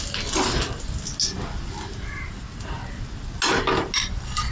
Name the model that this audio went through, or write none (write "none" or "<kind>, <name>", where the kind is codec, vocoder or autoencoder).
none